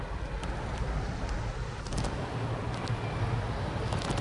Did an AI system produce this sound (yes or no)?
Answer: no